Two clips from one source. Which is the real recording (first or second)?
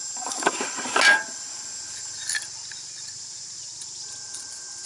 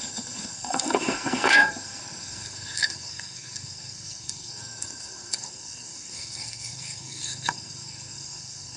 first